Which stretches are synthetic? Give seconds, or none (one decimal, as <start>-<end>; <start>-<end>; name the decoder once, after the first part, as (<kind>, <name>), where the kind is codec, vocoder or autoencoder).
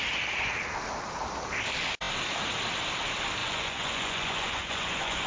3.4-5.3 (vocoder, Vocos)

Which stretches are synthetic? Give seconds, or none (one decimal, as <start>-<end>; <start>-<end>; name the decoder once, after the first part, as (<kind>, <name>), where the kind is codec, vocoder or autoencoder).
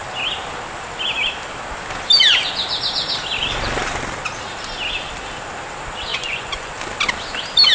6.1-6.7 (vocoder, Vocos)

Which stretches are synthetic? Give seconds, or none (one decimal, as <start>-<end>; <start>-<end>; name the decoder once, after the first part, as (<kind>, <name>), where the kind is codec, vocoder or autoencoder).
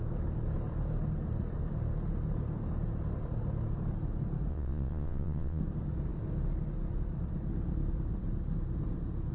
4.5-5.6 (vocoder, Vocos)